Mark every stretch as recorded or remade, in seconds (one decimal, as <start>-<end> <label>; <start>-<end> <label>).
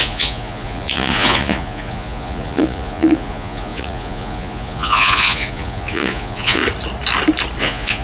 0.0-6.6 remade; 6.6-7.6 recorded; 7.6-8.0 remade